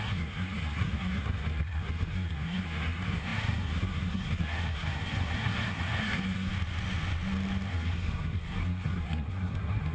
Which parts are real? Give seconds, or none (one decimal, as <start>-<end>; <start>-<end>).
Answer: 6.5-7.7